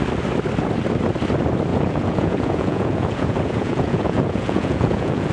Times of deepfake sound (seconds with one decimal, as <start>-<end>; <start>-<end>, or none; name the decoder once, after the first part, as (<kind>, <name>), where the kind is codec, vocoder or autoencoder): 1.7-5.3 (vocoder, Vocos)